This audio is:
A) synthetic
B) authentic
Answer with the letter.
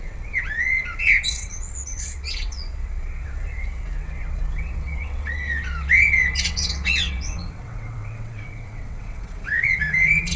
A